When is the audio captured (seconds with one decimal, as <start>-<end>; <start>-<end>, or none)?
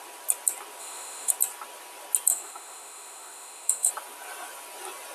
0.0-0.8; 1.3-2.3; 3.9-5.1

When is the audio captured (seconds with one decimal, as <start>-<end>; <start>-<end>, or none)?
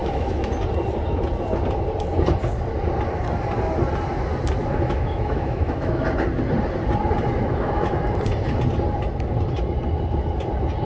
0.5-4.6; 6.0-7.4; 8.0-10.8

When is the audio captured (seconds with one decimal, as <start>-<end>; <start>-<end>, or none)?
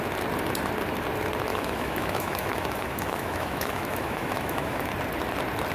0.0-1.5; 4.9-5.7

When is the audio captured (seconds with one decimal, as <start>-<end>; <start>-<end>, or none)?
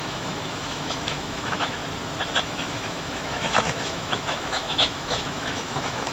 1.8-2.4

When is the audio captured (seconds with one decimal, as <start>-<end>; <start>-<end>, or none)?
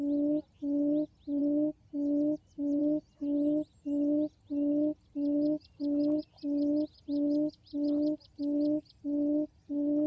0.0-10.1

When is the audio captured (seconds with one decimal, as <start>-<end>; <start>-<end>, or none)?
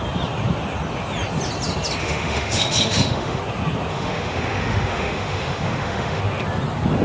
0.0-2.0; 3.4-3.9; 6.2-7.0